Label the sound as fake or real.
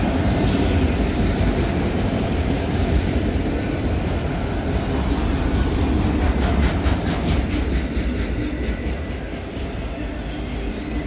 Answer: real